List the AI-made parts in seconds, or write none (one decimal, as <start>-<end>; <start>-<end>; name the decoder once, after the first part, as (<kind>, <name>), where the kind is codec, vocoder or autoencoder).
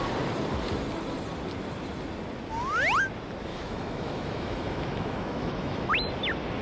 3.5-5.9 (autoencoder, DAC-VAE)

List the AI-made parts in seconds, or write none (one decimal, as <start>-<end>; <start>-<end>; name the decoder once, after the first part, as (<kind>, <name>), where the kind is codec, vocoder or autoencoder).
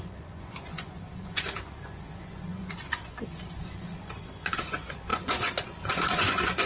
0.0-6.7 (vocoder, Vocos)